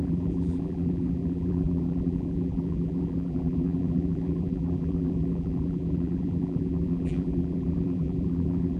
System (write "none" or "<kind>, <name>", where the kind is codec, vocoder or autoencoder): vocoder, BigVGAN v2